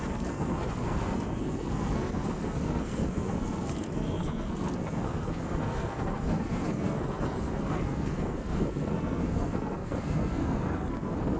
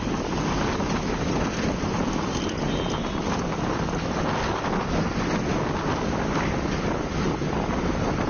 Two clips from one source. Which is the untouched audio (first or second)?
second